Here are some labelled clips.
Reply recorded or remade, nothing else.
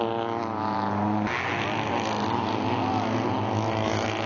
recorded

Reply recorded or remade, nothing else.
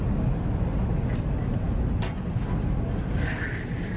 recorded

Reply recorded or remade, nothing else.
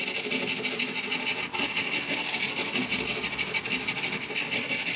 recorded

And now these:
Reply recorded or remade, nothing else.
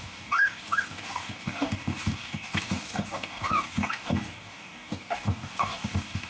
remade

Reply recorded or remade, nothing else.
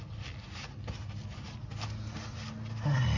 recorded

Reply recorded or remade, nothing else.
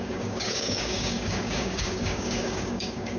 remade